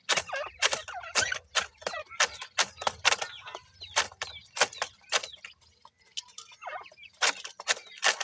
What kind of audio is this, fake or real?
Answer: real